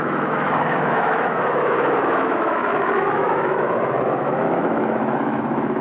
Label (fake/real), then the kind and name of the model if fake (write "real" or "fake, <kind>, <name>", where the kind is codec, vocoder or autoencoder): fake, autoencoder, DAC-VAE